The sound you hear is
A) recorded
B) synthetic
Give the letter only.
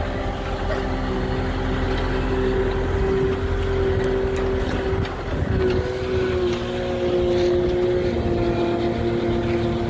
A